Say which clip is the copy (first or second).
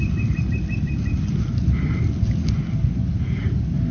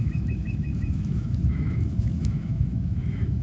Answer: second